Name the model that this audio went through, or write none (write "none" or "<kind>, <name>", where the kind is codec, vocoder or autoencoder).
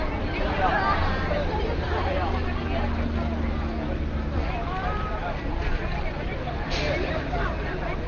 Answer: none